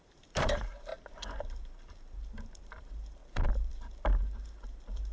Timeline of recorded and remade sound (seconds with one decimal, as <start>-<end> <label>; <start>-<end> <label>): 0.0-0.9 remade; 0.9-1.4 recorded; 1.4-5.1 remade